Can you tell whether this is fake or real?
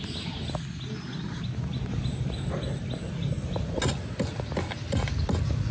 real